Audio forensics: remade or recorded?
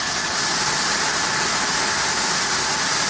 recorded